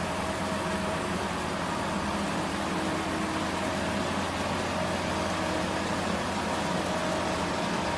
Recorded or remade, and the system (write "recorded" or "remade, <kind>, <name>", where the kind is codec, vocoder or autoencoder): recorded